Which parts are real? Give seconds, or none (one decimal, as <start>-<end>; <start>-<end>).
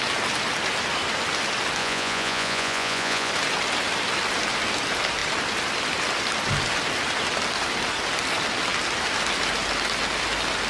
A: 0.0-1.8; 3.3-10.7